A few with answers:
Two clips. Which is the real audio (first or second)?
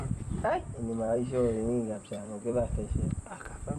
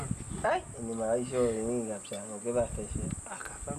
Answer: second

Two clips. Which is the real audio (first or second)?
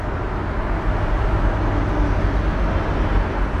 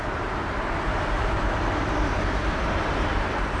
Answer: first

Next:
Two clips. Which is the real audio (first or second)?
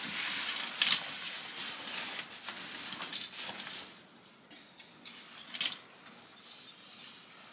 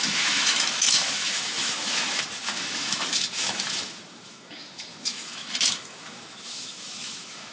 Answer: first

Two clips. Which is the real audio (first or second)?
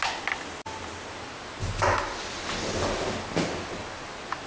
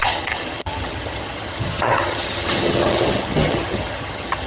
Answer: first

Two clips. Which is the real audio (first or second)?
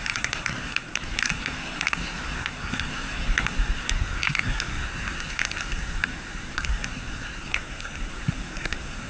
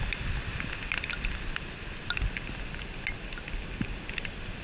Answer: second